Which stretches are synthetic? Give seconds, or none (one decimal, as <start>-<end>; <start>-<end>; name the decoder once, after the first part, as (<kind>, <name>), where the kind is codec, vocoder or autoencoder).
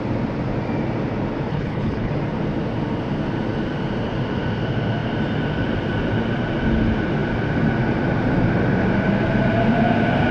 1.5-2.1 (codec, HILCodec)